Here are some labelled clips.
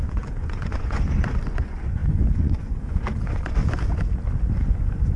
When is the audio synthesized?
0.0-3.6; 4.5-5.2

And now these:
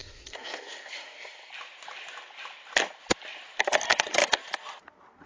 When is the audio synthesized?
0.0-1.5

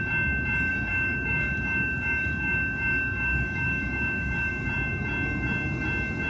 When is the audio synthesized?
0.7-4.5

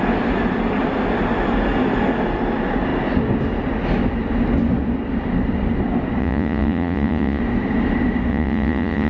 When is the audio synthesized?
6.2-7.4; 8.3-9.1